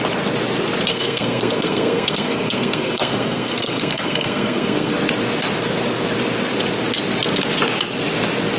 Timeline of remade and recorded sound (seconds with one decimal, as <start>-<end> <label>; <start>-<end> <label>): 0.0-0.9 recorded; 0.9-4.9 remade; 4.9-8.6 recorded